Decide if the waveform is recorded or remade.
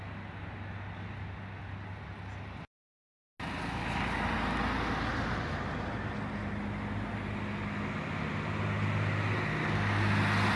recorded